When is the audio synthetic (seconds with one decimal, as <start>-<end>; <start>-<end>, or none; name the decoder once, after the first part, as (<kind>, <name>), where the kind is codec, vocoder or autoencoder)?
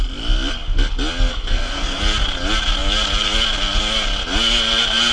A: 1.3-2.0 (codec, SNAC)